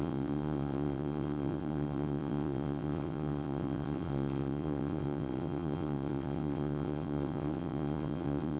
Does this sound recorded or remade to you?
remade